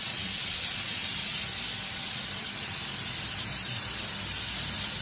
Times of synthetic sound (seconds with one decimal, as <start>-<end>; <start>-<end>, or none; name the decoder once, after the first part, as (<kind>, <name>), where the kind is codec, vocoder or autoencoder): 0.0-1.2 (vocoder, WaveNeXt); 1.9-2.8